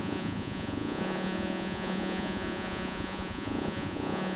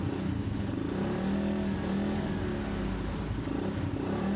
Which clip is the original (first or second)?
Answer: second